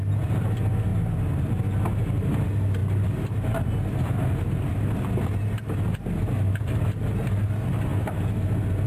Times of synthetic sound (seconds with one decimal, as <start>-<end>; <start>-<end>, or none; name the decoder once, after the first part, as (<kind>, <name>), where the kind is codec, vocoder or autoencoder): 7.9-8.9 (vocoder, BigVGAN v2)